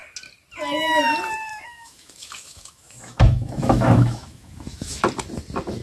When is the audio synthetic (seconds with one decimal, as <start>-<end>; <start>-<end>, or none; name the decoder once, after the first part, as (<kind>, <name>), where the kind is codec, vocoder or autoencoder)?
1.5-5.0 (autoencoder, DAC-VAE)

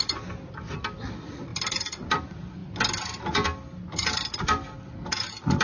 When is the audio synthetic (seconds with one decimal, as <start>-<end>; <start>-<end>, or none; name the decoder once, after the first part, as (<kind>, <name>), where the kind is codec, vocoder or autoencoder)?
none

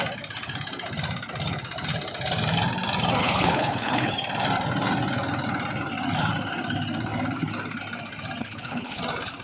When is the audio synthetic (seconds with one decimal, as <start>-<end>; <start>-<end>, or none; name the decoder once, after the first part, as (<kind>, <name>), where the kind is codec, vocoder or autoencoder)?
3.2-4.1 (codec, HILCodec); 8.4-9.0

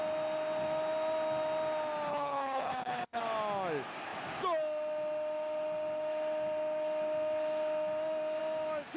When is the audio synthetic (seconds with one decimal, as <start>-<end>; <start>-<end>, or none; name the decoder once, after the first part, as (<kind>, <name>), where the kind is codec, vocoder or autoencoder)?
2.1-3.2 (codec, HILCodec)

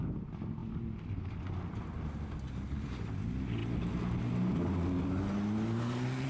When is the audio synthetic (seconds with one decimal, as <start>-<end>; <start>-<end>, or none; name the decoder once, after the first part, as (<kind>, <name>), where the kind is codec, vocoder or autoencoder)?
none

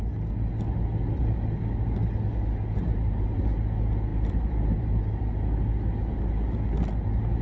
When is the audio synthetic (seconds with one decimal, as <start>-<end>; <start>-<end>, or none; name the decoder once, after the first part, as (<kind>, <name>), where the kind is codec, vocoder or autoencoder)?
2.8-3.4 (vocoder, BigVGAN v2); 4.1-5.2

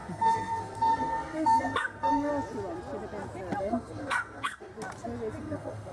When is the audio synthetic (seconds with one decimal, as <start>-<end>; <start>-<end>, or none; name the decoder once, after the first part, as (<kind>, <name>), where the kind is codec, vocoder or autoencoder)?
0.0-2.3 (codec, SNAC); 3.6-4.7; 5.4-5.9

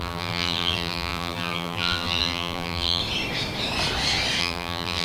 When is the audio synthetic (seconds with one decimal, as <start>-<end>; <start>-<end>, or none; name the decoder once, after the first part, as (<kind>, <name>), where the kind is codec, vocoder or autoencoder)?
0.0-3.0 (vocoder, BigVGAN v2); 4.4-5.0